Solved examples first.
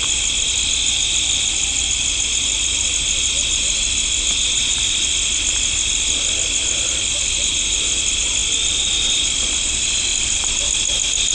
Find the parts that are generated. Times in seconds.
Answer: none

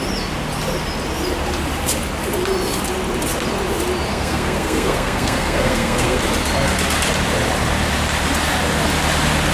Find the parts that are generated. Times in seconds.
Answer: 4.1-6.2 (codec, SNAC)

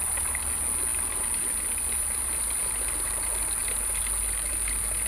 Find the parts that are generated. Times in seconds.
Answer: none

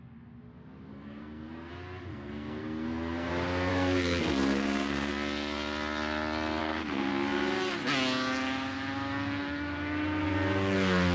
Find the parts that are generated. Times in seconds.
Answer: 0.9-1.7 (codec, SNAC); 2.1-3.3; 3.7-5.1; 6.6-7.1